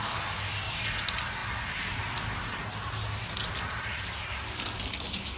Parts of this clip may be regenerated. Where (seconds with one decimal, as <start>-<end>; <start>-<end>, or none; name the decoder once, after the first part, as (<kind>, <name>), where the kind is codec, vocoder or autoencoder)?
none